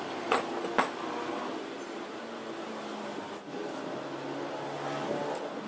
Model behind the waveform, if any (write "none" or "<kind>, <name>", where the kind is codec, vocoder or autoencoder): none